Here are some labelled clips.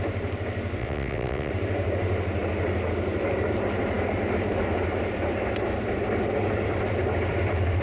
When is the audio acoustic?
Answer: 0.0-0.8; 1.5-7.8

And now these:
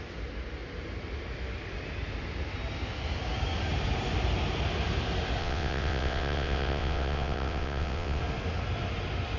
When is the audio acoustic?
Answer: 0.0-5.4; 8.2-9.4

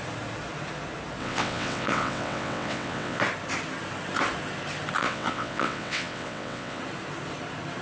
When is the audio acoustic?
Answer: 0.0-1.2; 3.2-5.0; 6.8-7.8

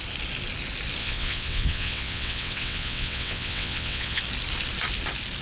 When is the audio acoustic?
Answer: 0.0-1.0; 4.2-5.4

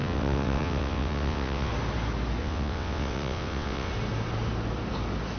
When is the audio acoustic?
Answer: 1.7-2.4; 3.9-5.4

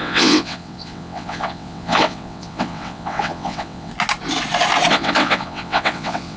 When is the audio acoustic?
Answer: 3.9-4.9

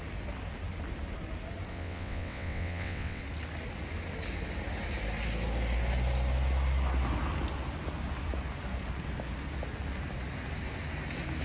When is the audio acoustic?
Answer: 0.0-1.7; 3.2-11.4

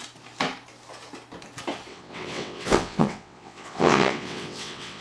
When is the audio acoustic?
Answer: 0.0-1.9